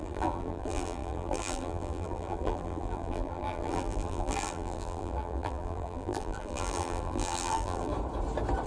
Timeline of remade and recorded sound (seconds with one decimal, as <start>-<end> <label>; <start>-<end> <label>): 0.0-7.9 remade; 7.9-8.7 recorded